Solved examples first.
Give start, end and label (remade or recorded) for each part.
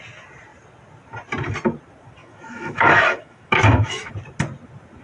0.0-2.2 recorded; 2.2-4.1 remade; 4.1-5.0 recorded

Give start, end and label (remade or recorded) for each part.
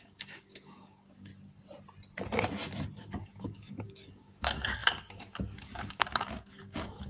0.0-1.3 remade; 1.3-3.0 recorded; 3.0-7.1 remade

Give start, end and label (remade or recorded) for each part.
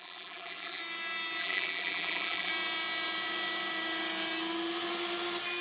0.0-0.8 remade; 0.8-1.4 recorded; 1.4-2.5 remade; 2.5-5.6 recorded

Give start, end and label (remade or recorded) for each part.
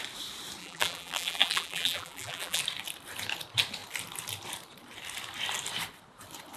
0.0-0.6 recorded; 0.6-2.6 remade; 2.6-6.6 recorded